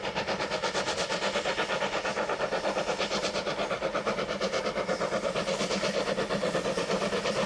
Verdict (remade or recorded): recorded